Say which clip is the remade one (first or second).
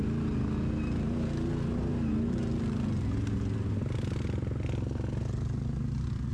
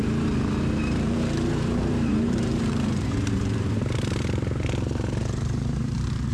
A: second